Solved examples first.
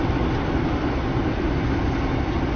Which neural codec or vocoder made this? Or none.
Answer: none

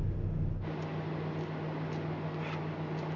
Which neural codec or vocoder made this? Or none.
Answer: none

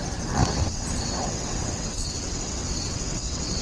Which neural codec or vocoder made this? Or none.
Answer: vocoder, WaveNeXt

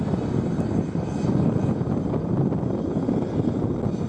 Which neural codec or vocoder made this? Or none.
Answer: none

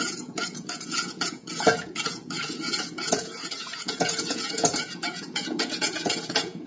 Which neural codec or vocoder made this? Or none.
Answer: vocoder, Vocos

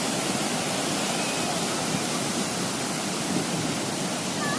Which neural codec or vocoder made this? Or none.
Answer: none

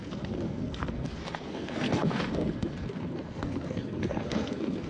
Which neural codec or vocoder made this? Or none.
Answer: codec, SNAC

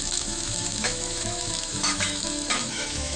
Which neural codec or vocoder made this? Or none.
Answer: autoencoder, DAC-VAE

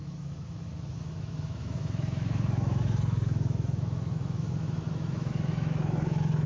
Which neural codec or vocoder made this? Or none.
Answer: autoencoder, DAC-VAE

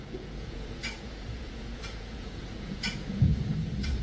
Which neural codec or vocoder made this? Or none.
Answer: vocoder, Vocos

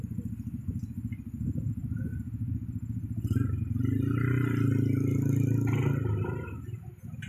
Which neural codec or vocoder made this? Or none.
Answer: none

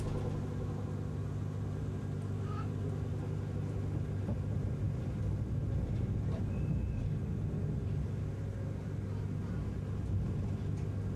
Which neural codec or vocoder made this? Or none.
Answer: none